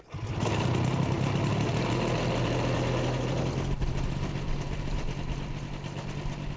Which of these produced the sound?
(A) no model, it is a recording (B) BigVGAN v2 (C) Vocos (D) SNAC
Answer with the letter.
A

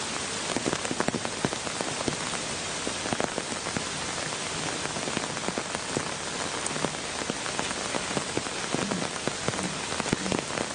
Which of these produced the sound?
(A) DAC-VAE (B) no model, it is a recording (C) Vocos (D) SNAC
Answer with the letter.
B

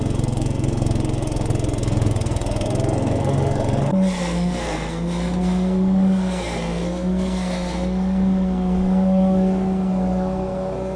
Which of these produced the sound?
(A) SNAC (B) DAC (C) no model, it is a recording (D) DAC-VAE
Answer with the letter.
A